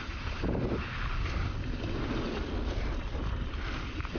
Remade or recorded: recorded